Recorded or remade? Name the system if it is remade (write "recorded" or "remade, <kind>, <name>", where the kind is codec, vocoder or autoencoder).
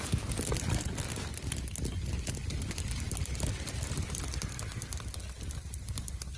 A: recorded